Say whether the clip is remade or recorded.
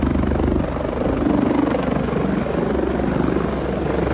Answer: recorded